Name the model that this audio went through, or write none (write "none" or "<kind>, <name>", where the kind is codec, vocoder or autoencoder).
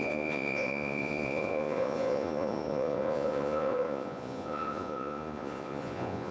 vocoder, Vocos